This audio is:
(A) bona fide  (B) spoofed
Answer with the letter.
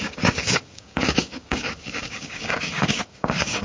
B